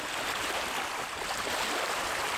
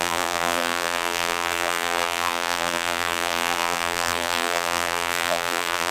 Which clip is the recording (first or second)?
first